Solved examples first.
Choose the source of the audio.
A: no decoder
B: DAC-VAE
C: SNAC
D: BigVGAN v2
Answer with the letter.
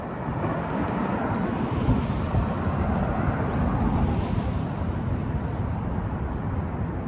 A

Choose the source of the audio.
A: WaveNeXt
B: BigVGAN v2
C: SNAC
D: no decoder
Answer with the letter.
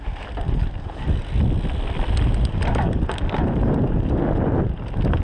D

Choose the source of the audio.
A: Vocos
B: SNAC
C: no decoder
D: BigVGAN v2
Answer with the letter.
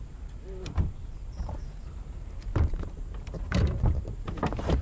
D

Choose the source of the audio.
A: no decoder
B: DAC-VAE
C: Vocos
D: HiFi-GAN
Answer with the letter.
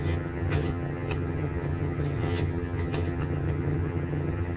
D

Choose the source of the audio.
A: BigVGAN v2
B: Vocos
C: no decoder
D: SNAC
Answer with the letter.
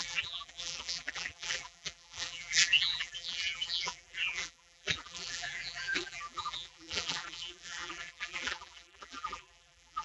A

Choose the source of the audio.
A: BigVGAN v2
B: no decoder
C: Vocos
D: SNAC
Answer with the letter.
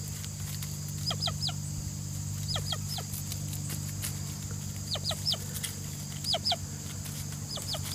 B